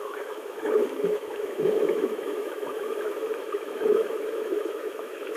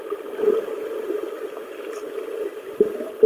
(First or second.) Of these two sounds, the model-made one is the first